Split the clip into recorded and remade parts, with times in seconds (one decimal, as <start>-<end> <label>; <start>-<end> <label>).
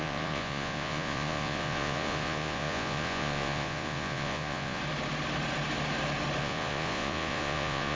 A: 0.0-4.8 remade; 4.8-6.4 recorded; 6.4-8.0 remade